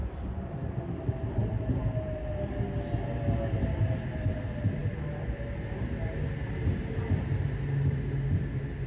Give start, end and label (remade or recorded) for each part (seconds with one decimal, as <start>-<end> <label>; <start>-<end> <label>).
0.0-8.9 recorded

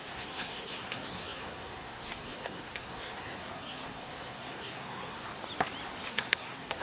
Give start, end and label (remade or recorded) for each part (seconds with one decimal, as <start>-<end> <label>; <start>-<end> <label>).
0.0-5.3 remade; 5.3-6.1 recorded; 6.1-6.8 remade

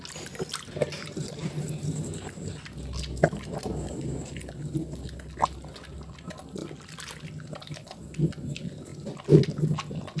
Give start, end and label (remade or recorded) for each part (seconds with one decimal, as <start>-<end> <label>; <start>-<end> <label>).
0.0-10.2 recorded

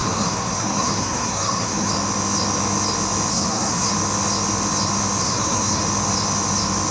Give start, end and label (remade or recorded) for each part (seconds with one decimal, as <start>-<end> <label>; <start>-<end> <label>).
0.0-1.9 remade; 1.9-3.3 recorded; 3.3-3.9 remade; 3.9-5.2 recorded; 5.2-5.8 remade; 5.8-6.9 recorded

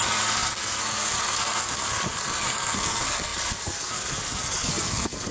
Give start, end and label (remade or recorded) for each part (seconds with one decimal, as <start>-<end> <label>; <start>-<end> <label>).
0.0-5.3 remade